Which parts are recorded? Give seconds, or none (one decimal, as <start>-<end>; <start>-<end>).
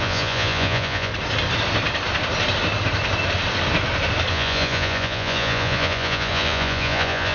1.1-4.3